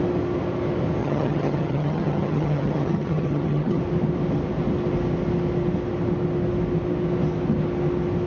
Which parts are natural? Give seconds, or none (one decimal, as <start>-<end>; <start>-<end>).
0.0-1.0; 3.8-8.3